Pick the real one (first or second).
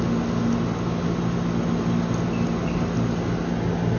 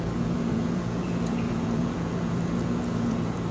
first